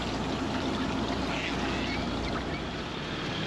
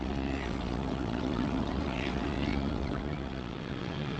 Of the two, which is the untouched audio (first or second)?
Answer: first